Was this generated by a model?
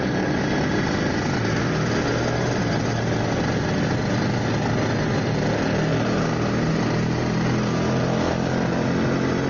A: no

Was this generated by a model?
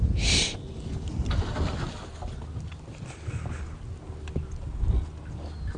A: no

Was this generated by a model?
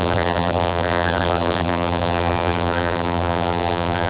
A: yes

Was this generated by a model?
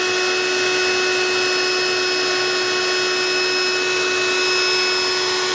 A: no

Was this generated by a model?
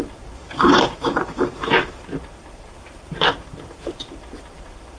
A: yes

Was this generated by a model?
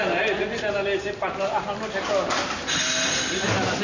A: no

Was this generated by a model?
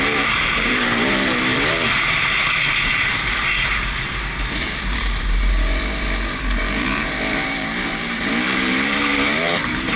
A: yes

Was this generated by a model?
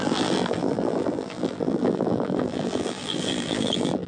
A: yes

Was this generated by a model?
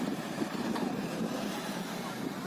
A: yes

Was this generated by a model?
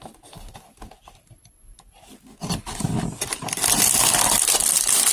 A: no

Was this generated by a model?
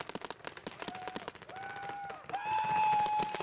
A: no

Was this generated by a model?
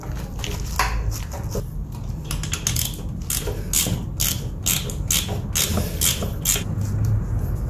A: no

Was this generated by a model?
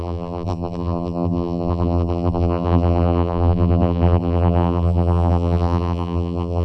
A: yes